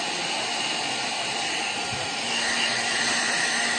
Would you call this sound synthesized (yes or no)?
no